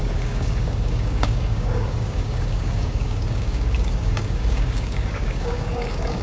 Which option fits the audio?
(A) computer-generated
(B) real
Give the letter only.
A